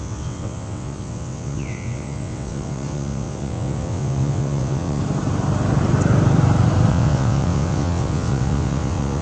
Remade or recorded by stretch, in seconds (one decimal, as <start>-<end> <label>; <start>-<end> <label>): 0.0-5.0 remade; 5.0-6.9 recorded; 6.9-9.2 remade